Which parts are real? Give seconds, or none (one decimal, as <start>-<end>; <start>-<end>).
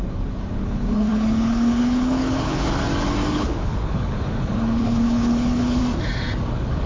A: 2.8-3.3; 5.8-6.5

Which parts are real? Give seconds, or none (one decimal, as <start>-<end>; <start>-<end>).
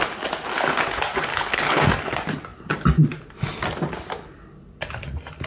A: 0.0-1.3; 1.8-5.5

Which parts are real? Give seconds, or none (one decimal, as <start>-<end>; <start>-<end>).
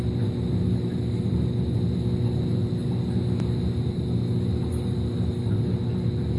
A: 0.0-6.4